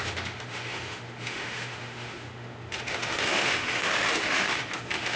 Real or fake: fake